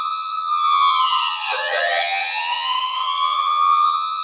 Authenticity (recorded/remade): remade